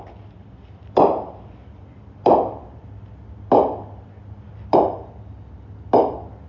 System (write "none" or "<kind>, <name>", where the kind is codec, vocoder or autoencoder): none